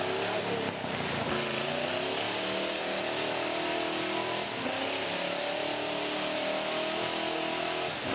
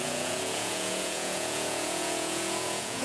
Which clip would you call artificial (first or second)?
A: second